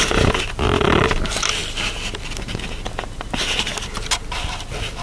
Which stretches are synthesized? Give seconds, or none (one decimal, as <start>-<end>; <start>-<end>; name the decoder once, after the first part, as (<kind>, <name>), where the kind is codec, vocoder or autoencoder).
none